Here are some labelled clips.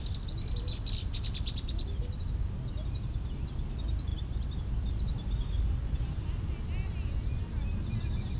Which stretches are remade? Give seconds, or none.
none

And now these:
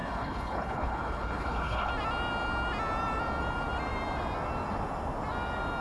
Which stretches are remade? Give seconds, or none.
0.0-1.9 (codec, HILCodec)

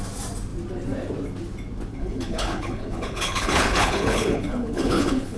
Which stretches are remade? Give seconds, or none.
1.9-5.4 (codec, HILCodec)

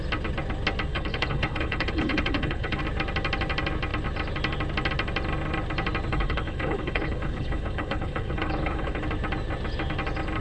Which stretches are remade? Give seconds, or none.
0.9-2.8 (codec, HILCodec); 6.1-9.0